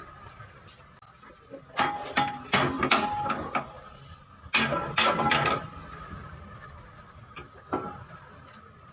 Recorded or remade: recorded